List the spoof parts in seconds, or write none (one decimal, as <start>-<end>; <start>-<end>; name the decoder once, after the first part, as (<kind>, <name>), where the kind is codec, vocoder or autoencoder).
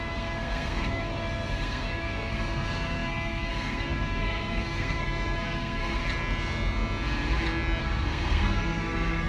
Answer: 0.0-6.0 (codec, SNAC); 7.8-9.3